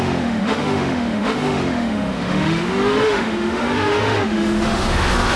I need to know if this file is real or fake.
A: fake